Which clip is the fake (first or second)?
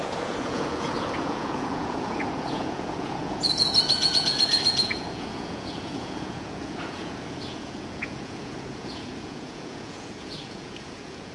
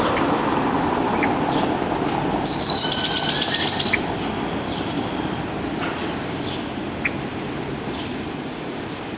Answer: first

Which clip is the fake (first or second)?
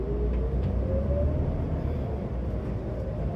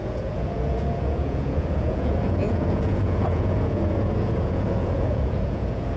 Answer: second